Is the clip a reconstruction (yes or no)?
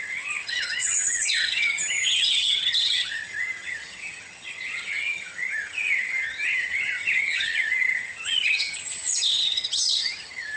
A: yes